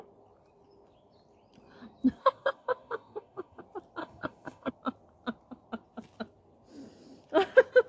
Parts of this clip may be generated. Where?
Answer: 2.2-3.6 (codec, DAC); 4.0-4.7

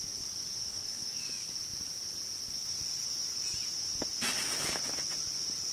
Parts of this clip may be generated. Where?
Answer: 0.6-1.2 (codec, DAC)

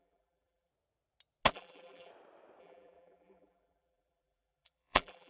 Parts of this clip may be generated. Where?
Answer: 0.0-0.7 (vocoder, BigVGAN v2); 1.5-2.1; 2.6-5.3

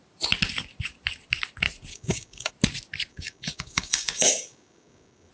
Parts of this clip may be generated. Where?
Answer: 1.9-2.5 (codec, DAC); 3.1-5.3

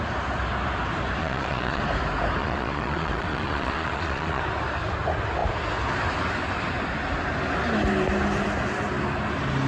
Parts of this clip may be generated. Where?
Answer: 1.2-1.8 (vocoder, Vocos); 2.4-4.4

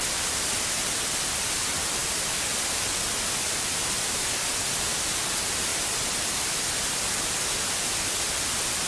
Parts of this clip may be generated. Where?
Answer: 2.0-2.5 (vocoder, BigVGAN v2)

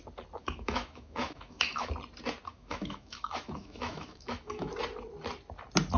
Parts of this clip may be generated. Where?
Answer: 0.4-1.9 (autoencoder, DAC-VAE); 2.5-4.7